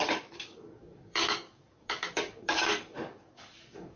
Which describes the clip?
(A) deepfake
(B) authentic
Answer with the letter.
A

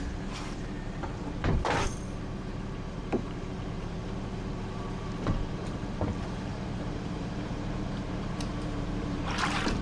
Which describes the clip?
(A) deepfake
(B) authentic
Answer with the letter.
A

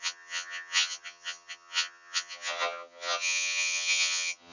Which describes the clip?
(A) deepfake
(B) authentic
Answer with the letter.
A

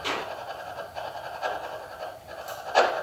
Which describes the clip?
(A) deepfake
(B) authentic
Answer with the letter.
B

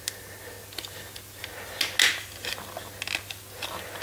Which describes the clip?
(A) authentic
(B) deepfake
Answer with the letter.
A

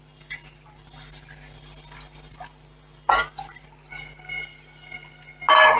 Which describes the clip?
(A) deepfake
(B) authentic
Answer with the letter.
B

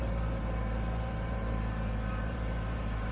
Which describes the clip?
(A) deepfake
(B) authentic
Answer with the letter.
A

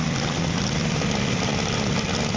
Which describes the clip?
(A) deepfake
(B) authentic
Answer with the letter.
B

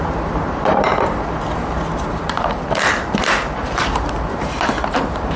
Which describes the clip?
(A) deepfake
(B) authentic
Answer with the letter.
A